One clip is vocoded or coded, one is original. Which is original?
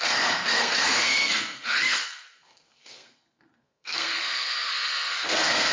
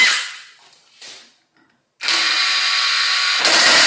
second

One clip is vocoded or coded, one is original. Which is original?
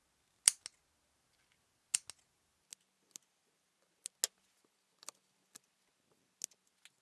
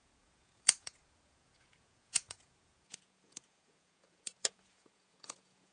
first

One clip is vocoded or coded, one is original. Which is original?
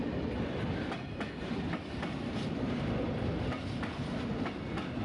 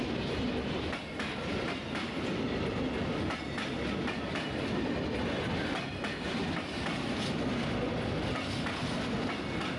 second